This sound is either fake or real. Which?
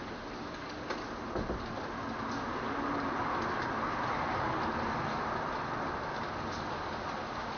real